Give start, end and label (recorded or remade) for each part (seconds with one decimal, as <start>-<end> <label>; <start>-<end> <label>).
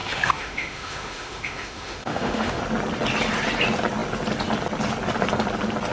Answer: 0.0-2.6 remade; 2.6-5.9 recorded